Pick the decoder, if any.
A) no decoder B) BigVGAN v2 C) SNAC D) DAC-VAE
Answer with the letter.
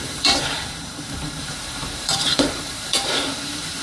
B